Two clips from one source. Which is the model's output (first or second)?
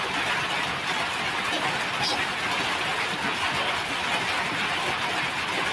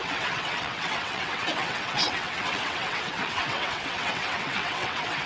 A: second